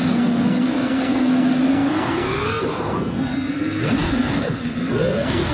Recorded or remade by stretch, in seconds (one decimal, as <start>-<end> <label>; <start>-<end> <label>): 0.0-5.5 remade